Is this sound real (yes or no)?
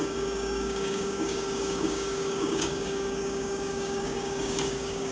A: no